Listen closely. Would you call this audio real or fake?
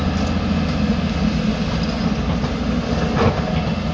real